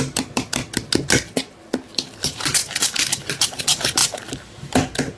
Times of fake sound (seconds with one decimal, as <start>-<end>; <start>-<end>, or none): 0.0-0.6; 2.2-5.2